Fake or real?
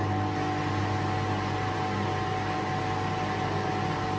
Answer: real